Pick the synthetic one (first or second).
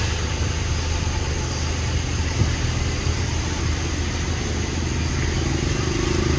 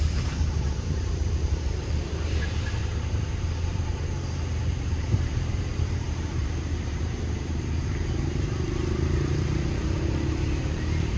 second